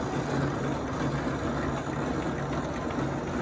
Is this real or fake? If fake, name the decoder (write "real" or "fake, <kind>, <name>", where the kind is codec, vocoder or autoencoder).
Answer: real